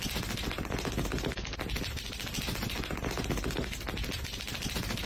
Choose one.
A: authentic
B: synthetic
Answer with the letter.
A